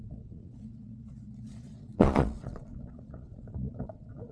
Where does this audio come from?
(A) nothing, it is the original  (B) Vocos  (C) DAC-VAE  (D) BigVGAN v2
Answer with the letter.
B